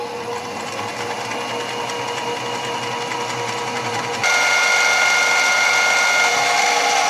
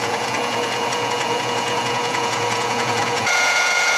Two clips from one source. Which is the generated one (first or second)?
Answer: second